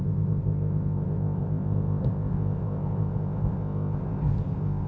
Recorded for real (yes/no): no